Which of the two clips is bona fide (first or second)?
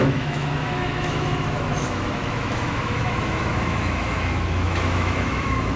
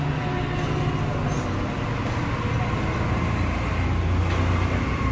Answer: second